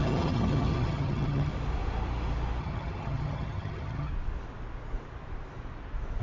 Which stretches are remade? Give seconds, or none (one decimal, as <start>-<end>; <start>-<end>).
0.0-1.5; 2.6-4.1